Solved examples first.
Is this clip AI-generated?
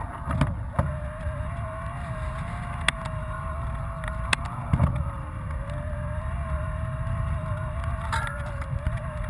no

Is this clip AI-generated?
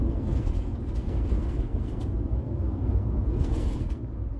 yes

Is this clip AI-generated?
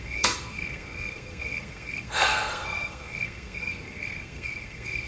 yes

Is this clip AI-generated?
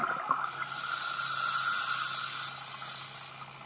no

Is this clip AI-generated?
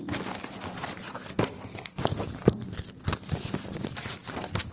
no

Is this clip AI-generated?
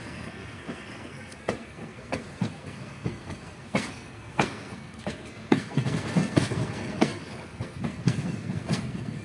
yes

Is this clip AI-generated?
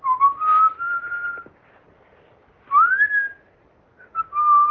no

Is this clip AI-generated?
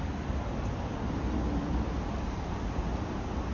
no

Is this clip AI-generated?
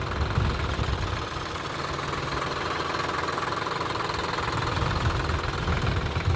no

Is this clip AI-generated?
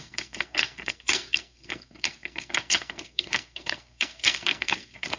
yes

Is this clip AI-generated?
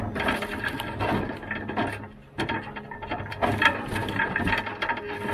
no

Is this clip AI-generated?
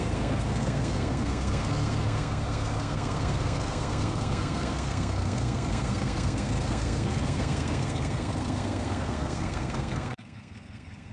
yes